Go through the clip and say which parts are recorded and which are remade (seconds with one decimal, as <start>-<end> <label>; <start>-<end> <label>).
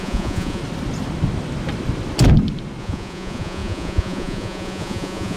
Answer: 0.0-0.6 remade; 0.6-2.8 recorded; 2.8-5.4 remade